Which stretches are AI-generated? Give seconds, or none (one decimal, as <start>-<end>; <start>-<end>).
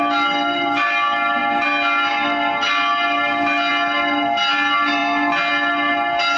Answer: none